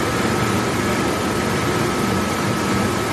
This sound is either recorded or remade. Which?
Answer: recorded